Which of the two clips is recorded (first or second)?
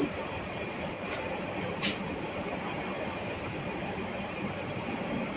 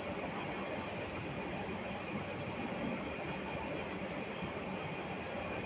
second